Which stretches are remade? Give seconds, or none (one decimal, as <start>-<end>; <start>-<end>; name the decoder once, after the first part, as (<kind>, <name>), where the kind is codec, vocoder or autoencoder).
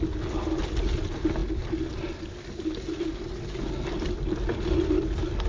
none